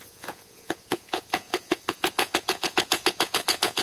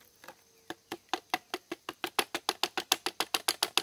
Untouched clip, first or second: second